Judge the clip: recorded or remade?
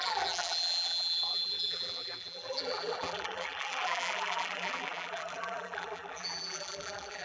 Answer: remade